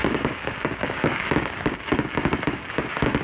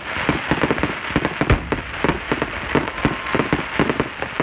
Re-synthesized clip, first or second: first